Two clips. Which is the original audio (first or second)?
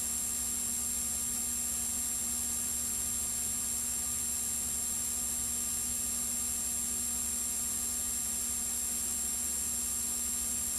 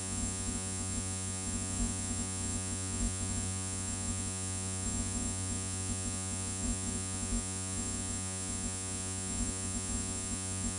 first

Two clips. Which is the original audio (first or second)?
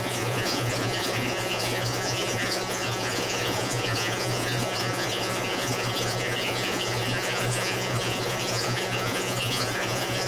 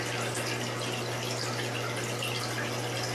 second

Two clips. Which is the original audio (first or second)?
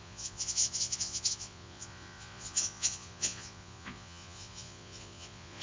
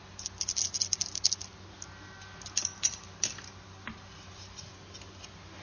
second